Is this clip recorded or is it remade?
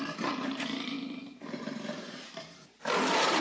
remade